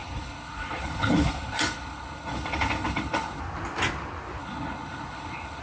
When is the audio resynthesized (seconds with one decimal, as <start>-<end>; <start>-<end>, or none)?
0.0-3.4; 4.4-5.6

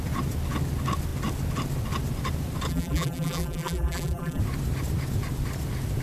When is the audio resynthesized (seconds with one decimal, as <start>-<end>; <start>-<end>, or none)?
2.7-4.4

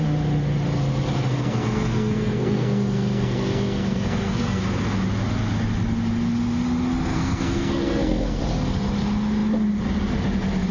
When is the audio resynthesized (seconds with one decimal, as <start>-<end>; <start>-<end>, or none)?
1.3-4.6; 7.1-8.4

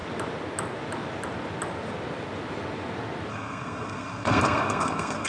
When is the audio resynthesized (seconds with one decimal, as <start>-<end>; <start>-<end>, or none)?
3.3-5.3